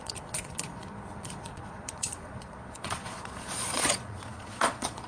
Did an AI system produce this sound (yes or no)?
yes